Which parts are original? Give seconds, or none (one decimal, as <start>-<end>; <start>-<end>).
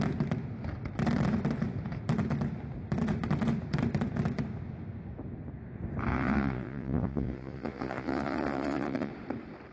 0.0-6.1; 9.1-9.7